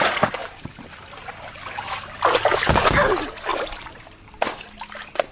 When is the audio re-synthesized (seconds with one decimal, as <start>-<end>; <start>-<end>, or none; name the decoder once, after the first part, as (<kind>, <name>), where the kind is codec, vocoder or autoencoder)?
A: 0.4-1.6 (vocoder, BigVGAN v2); 3.5-4.3